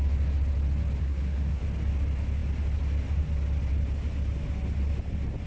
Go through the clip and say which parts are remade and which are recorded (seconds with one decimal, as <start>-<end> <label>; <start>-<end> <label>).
0.0-1.0 recorded; 1.0-1.6 remade; 1.6-5.5 recorded

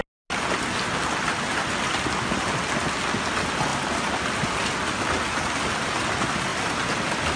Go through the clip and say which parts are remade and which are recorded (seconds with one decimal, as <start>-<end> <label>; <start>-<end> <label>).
0.0-3.7 recorded; 3.7-4.7 remade; 4.7-6.5 recorded; 6.5-7.4 remade

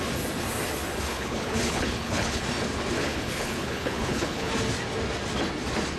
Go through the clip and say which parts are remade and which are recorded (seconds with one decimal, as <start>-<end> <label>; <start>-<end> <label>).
0.0-1.1 recorded; 1.1-2.4 remade; 2.4-3.0 recorded; 3.0-4.5 remade; 4.5-6.0 recorded

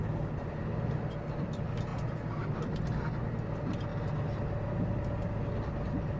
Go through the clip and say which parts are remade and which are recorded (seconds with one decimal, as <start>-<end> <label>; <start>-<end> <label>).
0.0-6.2 recorded

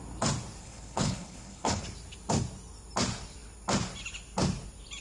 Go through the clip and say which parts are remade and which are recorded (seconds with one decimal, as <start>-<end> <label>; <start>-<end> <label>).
0.0-0.6 recorded; 0.6-1.8 remade; 1.8-5.0 recorded

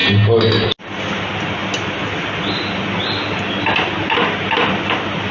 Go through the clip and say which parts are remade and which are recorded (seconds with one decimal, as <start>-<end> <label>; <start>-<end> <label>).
0.0-5.3 recorded